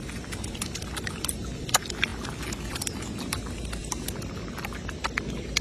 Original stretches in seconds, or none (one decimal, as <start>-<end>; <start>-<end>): 0.0-5.6